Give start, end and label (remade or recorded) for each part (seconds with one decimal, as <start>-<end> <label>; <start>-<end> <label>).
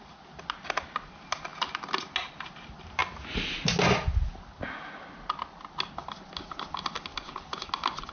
0.0-8.1 recorded